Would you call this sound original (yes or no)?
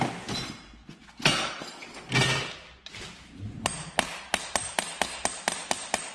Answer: yes